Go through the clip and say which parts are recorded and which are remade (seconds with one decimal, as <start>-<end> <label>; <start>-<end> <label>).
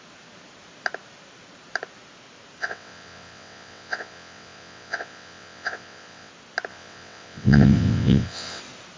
0.0-2.6 recorded; 2.6-6.3 remade; 6.3-6.7 recorded; 6.7-8.6 remade; 8.6-9.0 recorded